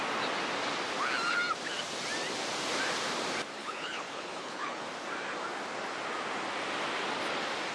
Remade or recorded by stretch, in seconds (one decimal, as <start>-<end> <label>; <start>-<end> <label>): 0.0-3.6 recorded; 3.6-4.8 remade; 4.8-7.7 recorded